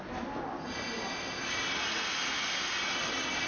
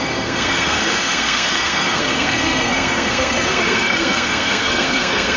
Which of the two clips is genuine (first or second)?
first